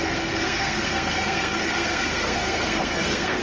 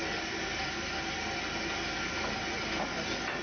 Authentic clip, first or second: second